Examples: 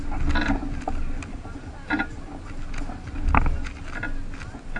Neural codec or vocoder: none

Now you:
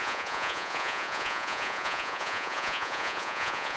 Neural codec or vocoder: vocoder, Vocos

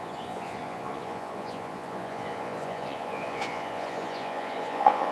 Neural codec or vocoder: vocoder, Vocos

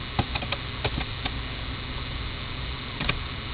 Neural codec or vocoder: none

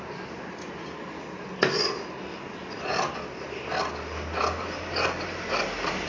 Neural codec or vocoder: none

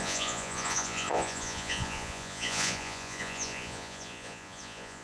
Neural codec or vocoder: vocoder, Vocos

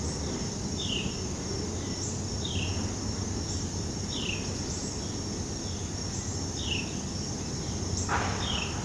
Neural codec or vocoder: none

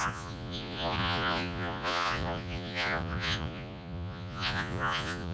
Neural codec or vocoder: vocoder, Vocos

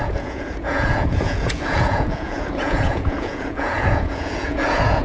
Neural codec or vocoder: vocoder, Vocos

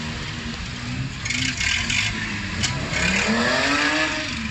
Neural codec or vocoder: none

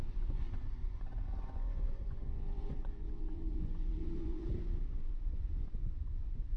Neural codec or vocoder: vocoder, Vocos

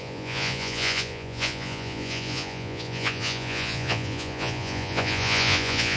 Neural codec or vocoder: vocoder, Vocos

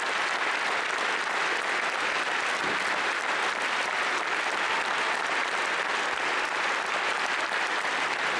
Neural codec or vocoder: none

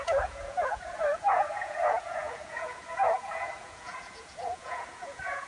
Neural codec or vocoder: vocoder, Vocos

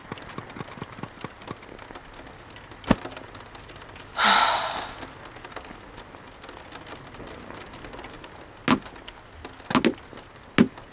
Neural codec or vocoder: none